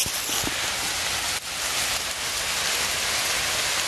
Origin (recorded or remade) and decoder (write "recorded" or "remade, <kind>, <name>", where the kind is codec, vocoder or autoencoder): recorded